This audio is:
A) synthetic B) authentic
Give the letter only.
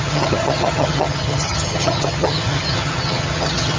A